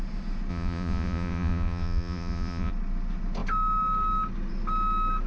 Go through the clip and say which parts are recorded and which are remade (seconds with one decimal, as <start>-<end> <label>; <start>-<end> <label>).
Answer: 0.0-0.5 recorded; 0.5-2.7 remade; 2.7-5.3 recorded